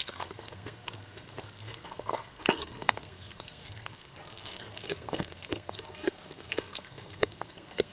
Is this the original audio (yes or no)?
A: no